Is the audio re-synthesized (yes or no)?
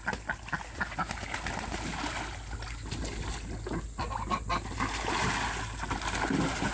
no